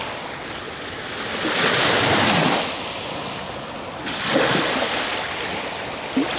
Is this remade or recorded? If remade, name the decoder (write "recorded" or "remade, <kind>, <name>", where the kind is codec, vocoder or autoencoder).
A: recorded